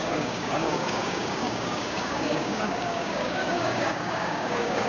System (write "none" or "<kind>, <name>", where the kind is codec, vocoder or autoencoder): codec, DAC